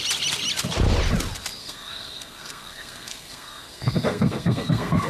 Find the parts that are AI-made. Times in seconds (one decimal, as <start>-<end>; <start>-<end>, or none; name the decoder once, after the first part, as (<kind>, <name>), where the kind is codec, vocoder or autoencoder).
1.6-5.1 (codec, SNAC)